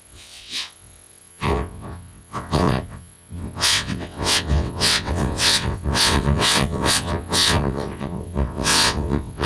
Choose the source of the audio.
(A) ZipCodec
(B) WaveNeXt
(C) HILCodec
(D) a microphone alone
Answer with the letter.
B